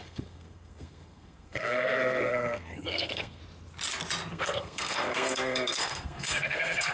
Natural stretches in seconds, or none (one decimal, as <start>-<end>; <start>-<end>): 3.4-4.3